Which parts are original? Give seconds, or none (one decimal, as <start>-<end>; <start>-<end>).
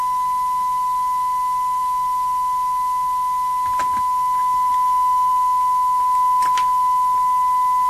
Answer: 0.0-7.9